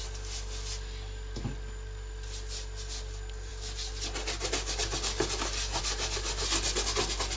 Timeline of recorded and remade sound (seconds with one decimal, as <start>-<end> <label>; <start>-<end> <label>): 0.0-7.4 recorded